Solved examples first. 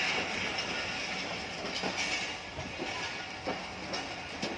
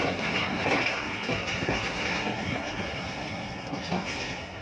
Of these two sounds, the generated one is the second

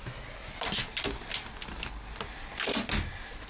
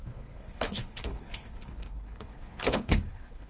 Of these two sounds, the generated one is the second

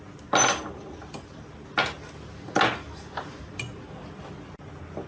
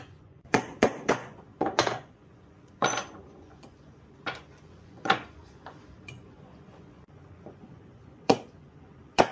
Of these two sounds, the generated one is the second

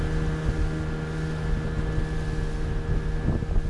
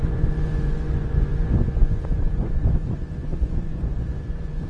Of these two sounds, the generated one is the second